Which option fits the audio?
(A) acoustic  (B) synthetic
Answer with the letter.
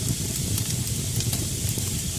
B